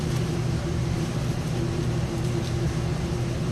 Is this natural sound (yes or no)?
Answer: yes